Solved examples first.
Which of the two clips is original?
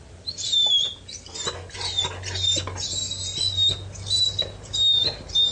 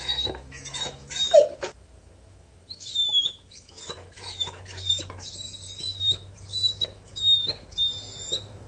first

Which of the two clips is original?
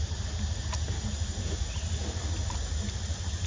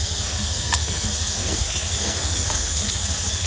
first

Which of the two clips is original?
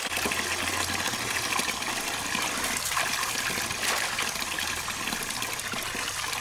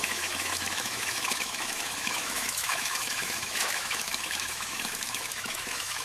first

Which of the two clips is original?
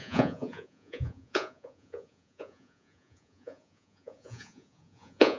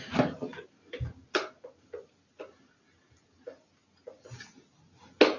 second